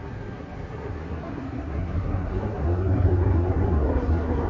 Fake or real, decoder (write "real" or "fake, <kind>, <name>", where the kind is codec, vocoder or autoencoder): fake, codec, SNAC